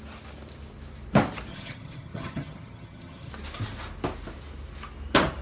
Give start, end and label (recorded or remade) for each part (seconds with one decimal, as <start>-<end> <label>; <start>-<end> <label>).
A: 0.0-1.5 recorded; 1.5-3.3 remade; 3.3-5.4 recorded